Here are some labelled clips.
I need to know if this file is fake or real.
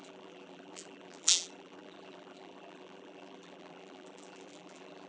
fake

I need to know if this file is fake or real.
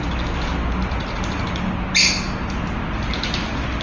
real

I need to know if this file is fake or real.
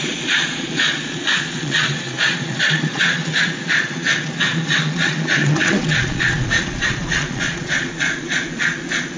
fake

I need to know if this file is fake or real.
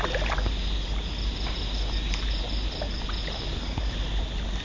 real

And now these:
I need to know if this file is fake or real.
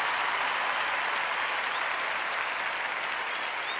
real